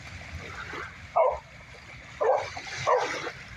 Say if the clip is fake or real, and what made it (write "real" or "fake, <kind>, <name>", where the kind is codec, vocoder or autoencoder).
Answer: real